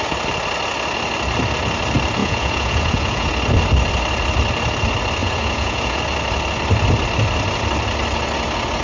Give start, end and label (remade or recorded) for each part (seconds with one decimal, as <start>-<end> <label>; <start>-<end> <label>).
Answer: 0.0-2.2 recorded; 2.2-3.3 remade; 3.3-5.2 recorded; 5.2-6.0 remade; 6.0-8.8 recorded